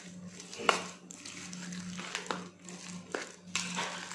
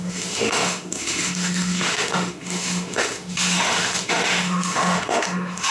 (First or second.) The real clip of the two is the first